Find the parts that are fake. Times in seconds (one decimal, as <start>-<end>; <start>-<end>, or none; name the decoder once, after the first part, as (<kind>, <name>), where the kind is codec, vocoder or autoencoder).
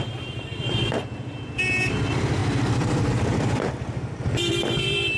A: 0.0-5.2 (vocoder, BigVGAN v2)